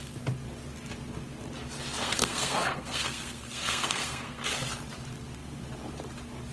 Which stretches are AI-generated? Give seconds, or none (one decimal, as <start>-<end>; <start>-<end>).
2.0-4.4